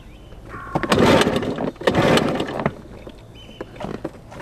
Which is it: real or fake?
real